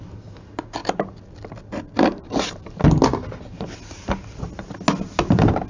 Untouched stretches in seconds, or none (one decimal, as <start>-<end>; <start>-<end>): 0.0-5.7